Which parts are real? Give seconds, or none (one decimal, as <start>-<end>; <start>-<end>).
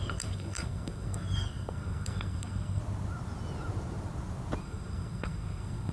2.8-4.6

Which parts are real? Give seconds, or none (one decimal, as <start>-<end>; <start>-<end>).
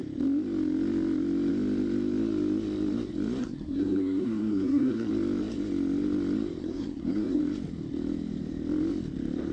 0.0-3.4; 5.1-6.6; 7.4-9.5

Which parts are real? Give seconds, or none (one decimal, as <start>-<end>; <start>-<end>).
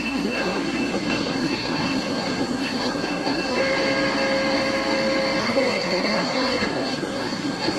3.6-5.4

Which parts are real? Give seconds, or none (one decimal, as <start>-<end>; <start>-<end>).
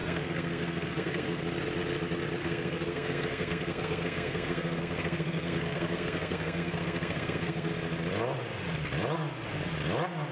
1.4-2.4; 7.7-10.3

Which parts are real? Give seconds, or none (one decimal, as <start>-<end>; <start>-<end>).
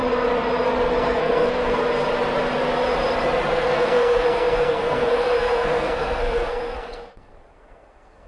0.0-0.9; 1.8-3.5